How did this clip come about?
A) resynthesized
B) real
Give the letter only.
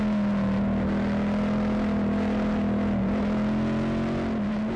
B